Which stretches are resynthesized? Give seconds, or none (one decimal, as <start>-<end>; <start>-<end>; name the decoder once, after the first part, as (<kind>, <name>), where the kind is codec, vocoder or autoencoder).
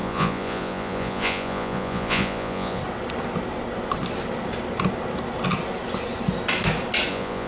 0.0-2.8 (vocoder, Vocos); 7.1-7.5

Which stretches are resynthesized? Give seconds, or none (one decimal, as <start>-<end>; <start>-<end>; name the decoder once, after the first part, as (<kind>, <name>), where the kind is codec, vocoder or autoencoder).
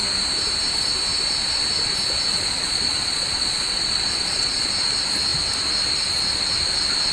2.3-4.7 (vocoder, Vocos)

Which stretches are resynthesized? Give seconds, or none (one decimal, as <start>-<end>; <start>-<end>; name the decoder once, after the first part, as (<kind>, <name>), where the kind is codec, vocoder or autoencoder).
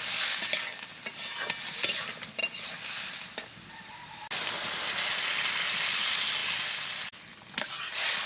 none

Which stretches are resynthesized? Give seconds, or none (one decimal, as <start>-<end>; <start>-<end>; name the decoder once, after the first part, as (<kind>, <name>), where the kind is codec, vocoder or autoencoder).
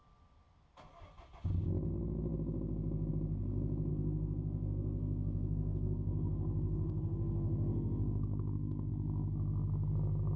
3.9-8.9 (codec, SNAC)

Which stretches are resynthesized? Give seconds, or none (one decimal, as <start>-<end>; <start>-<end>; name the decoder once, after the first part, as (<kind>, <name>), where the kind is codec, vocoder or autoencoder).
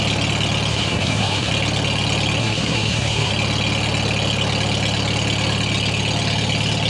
0.7-1.5 (codec, SNAC); 2.4-3.3